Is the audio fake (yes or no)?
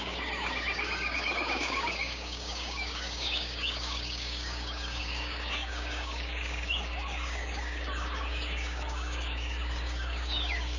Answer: yes